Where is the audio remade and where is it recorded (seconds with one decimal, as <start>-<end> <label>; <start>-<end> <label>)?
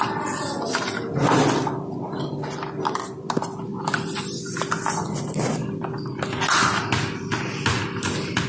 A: 0.0-8.5 recorded